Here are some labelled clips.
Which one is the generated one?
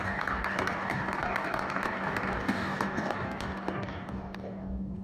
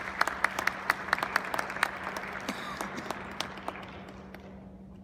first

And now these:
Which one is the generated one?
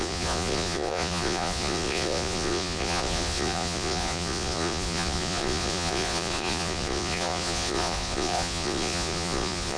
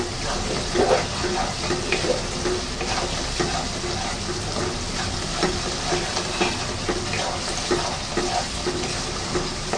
first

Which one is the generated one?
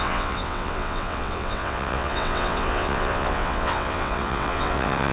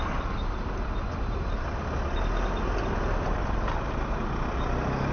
first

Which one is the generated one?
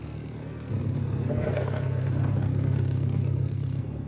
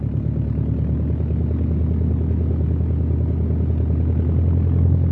first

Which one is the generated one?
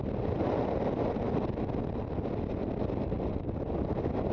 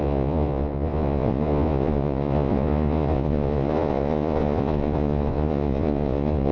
second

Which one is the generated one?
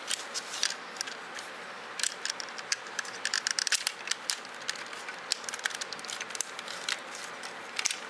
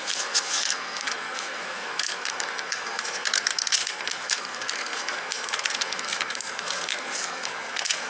second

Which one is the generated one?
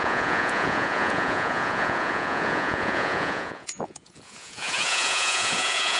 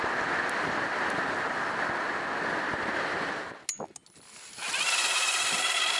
first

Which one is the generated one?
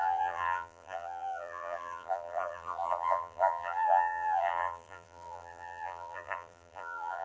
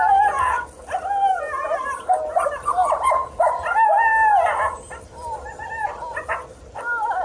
first